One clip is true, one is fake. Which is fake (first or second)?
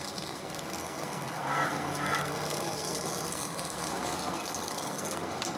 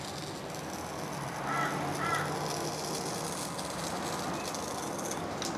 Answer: first